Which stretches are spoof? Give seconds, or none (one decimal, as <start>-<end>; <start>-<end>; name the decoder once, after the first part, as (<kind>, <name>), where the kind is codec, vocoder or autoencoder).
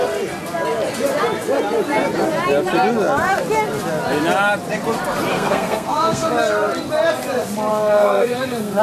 5.3-6.3 (codec, SNAC); 7.7-8.8